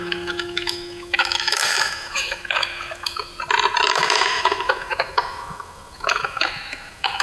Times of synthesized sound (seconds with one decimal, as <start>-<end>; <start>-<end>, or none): 0.0-3.3; 3.9-7.2